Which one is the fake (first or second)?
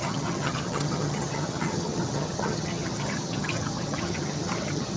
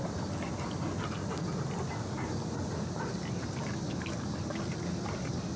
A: first